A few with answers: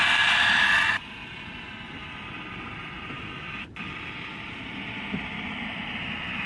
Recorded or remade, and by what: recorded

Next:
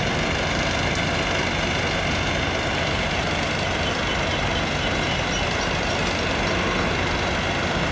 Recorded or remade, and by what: recorded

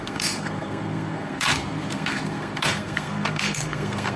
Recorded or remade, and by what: remade, codec, SNAC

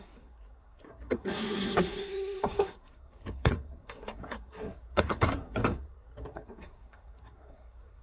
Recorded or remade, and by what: remade, codec, SNAC